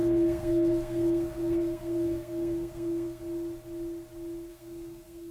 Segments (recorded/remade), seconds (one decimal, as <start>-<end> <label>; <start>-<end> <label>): 0.0-3.2 remade; 3.2-4.5 recorded; 4.5-5.3 remade